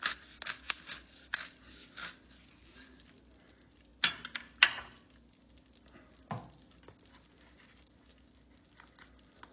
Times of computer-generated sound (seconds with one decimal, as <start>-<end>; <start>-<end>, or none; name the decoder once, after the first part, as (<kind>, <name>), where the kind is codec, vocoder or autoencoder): none